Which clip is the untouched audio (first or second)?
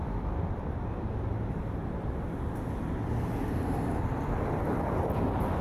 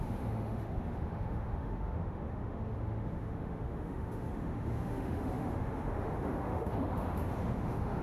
first